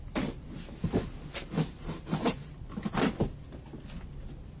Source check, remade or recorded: recorded